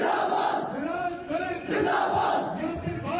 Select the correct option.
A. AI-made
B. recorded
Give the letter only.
A